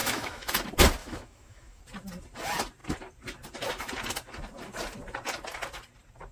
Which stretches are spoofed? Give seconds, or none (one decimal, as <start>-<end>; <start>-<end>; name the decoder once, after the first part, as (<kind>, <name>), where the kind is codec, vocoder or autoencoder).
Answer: 0.0-0.5 (autoencoder, DAC-VAE); 1.0-1.8